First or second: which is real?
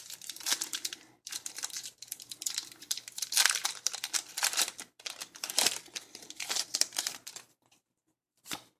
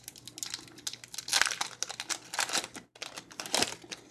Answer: second